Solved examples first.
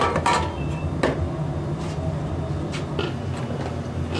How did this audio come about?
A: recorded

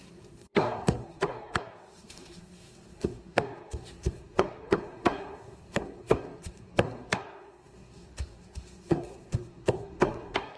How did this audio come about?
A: remade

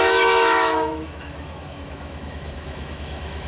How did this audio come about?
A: remade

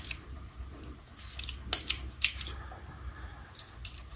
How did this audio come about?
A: recorded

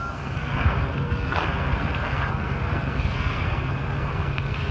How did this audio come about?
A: remade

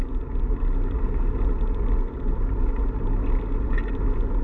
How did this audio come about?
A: recorded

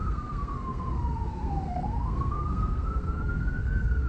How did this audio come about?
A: remade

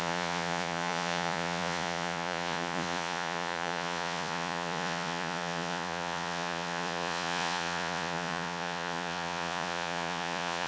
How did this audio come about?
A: remade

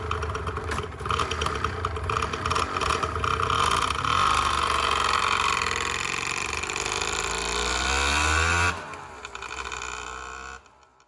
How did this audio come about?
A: recorded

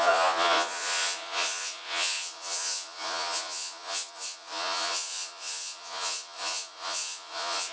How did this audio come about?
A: remade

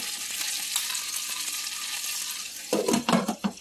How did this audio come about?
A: recorded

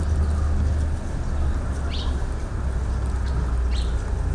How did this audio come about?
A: recorded